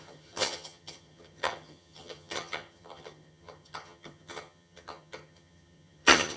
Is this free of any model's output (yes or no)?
no